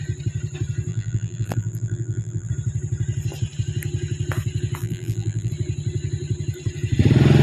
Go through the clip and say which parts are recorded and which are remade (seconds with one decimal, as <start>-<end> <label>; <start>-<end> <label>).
0.0-0.9 recorded; 0.9-2.5 remade; 2.5-4.8 recorded; 4.8-5.5 remade; 5.5-7.4 recorded